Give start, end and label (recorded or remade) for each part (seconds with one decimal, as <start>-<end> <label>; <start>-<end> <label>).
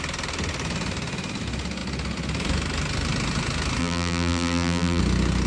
0.0-3.8 recorded; 3.8-5.0 remade; 5.0-5.5 recorded